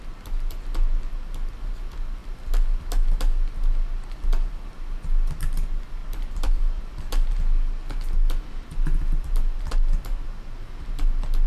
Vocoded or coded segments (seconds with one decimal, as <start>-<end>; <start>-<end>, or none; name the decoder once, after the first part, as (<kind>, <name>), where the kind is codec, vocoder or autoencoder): 6.0-7.3 (vocoder, BigVGAN v2)